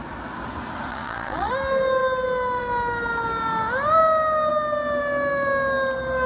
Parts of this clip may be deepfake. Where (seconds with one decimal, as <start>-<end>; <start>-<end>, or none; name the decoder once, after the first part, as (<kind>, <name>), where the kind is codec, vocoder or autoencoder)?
0.9-1.5 (vocoder, Vocos)